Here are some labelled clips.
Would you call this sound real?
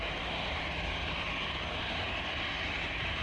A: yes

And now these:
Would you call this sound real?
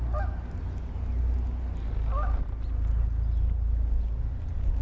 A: yes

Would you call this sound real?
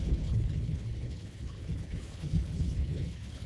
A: no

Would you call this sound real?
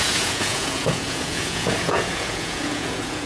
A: no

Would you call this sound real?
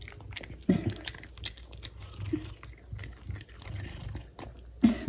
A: yes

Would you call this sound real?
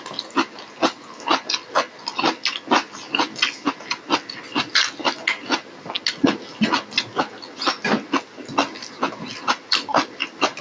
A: yes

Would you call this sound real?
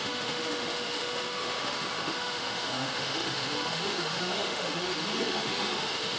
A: no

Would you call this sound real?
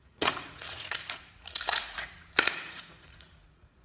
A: no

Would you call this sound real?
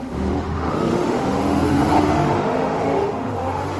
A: no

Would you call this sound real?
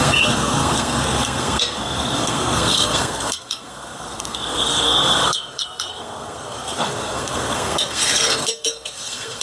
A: no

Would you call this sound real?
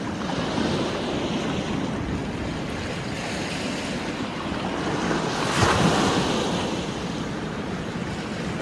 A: yes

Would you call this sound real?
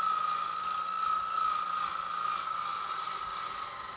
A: yes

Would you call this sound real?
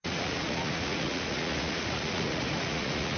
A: no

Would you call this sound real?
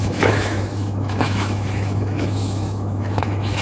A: no